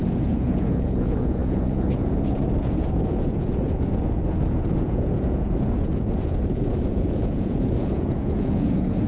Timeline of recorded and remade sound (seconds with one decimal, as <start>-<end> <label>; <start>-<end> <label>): 0.0-9.1 remade